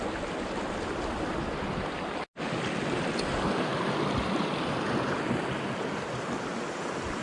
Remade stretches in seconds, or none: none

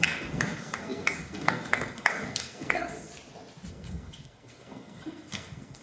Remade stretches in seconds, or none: 0.0-3.1 (codec, SNAC); 3.7-5.8

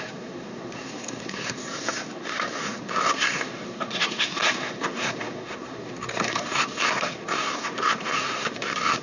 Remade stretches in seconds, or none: 0.0-9.0 (codec, SNAC)

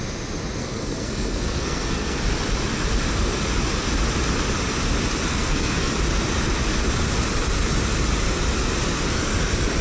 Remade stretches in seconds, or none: 0.6-2.2 (codec, SNAC); 5.3-5.9

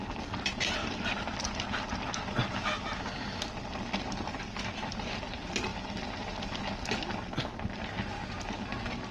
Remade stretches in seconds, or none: none

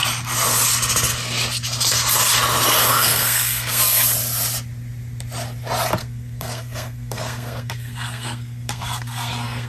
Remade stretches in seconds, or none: 2.9-4.0 (codec, SNAC); 6.0-9.7

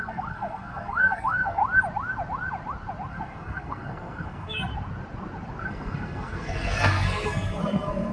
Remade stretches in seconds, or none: 0.0-1.6 (codec, SNAC); 3.1-4.7; 5.6-8.1